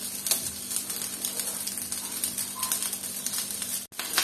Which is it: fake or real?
real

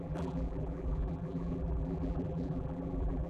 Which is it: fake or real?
fake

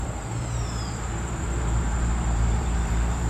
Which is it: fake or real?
fake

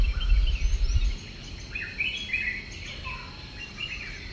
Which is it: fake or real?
real